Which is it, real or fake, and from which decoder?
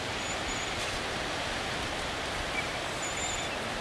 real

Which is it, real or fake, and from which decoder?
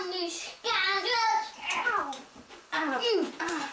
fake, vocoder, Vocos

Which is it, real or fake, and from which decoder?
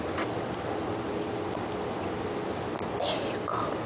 real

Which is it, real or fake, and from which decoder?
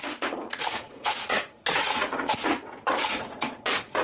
fake, vocoder, Vocos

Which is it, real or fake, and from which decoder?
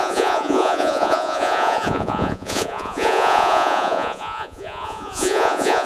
fake, vocoder, Vocos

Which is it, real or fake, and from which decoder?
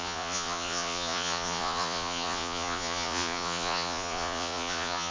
fake, vocoder, Vocos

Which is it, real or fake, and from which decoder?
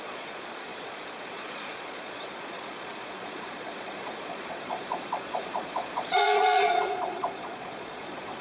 fake, vocoder, Vocos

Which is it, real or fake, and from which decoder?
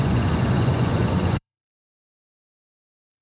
fake, vocoder, Vocos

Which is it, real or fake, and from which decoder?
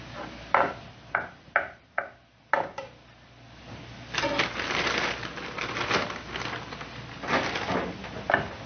real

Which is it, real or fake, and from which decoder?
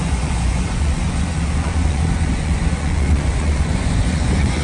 fake, vocoder, Vocos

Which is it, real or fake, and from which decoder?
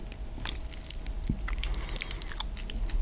real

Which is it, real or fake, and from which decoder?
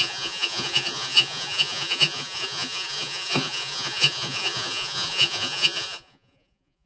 fake, vocoder, Vocos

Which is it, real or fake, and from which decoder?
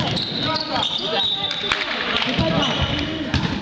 real